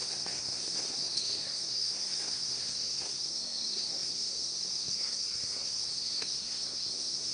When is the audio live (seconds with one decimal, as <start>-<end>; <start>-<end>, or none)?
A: none